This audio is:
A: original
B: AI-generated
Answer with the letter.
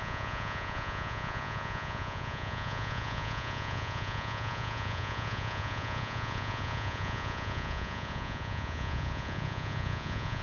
B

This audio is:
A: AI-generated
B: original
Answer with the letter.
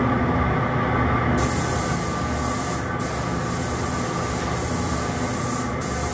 B